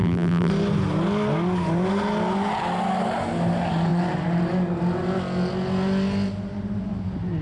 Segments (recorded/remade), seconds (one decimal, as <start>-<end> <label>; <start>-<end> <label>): 0.0-0.5 remade; 0.5-7.4 recorded

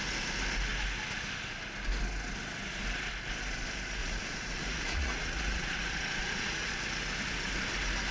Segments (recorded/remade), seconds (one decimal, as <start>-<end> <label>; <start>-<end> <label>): 0.0-4.0 recorded; 4.0-6.7 remade; 6.7-8.1 recorded